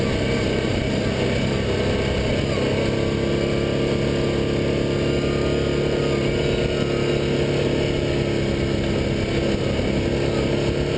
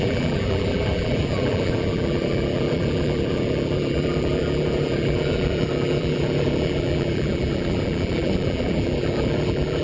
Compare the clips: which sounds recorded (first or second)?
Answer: first